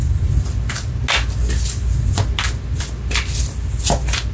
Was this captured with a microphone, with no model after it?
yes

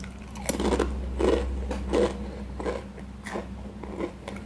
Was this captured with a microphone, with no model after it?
yes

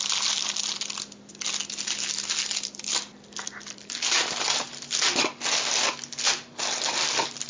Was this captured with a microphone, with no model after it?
yes